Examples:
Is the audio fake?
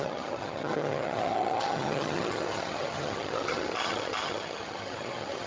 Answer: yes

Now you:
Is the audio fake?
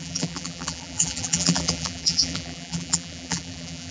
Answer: yes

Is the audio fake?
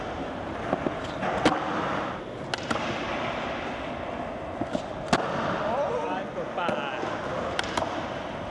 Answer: no